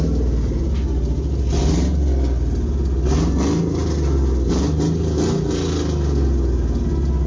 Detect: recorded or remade recorded